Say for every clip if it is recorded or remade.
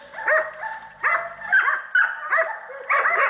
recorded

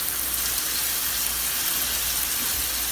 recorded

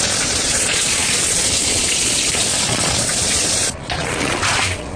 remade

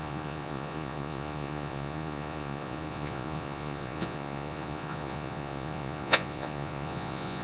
remade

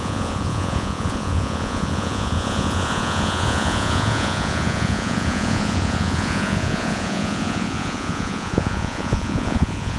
remade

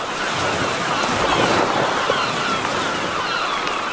recorded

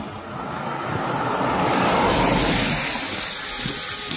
recorded